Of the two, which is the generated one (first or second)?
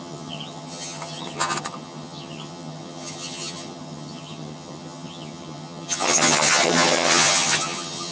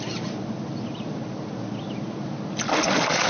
first